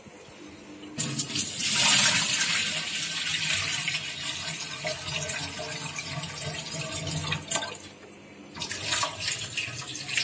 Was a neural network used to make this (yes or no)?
no